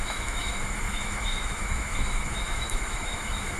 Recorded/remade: remade